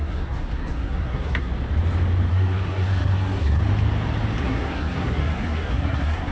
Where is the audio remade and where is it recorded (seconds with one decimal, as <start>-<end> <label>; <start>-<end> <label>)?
0.0-1.5 remade; 1.5-2.3 recorded; 2.3-3.6 remade; 3.6-4.4 recorded; 4.4-6.3 remade